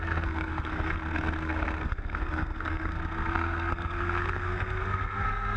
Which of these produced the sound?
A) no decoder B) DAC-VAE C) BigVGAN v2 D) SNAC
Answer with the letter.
D